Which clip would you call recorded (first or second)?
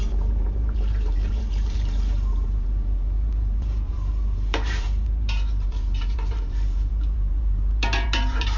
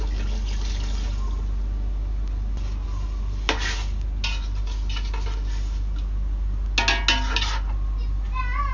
second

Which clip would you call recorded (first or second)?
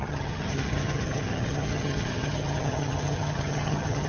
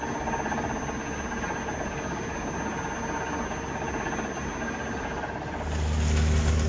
second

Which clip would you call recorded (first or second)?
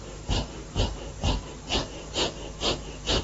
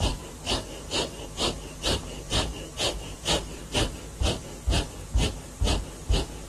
first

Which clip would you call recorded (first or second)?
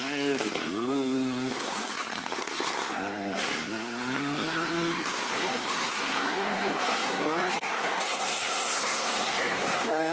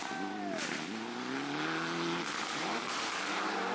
second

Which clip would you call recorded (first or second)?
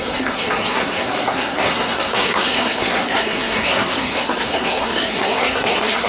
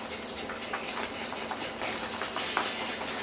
second